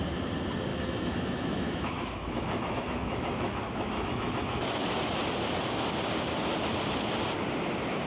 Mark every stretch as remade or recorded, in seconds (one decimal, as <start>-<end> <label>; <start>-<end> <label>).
0.0-0.7 recorded; 0.7-5.0 remade; 5.0-8.1 recorded